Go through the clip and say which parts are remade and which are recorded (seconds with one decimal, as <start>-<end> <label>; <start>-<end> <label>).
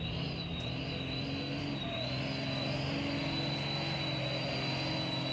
0.0-5.3 recorded